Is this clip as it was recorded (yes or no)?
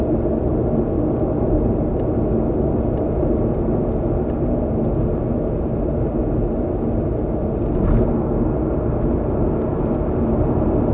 yes